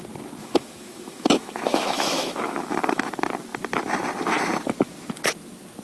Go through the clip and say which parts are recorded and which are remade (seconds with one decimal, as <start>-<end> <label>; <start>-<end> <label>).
0.0-0.4 recorded; 0.4-3.1 remade; 3.1-5.8 recorded